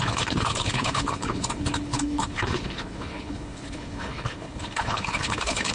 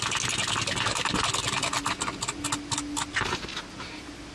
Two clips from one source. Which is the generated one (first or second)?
first